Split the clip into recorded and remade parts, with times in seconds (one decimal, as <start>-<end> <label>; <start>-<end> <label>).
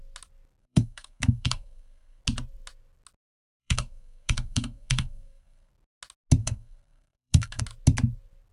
0.0-0.6 recorded; 0.6-2.2 remade; 2.2-3.6 recorded; 3.6-5.7 remade; 5.7-6.4 recorded; 6.4-7.6 remade; 7.6-8.5 recorded